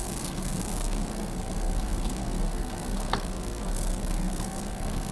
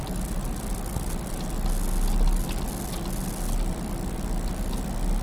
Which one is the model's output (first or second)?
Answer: first